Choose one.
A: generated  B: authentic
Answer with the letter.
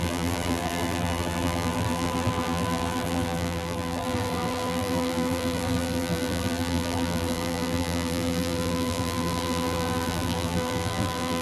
A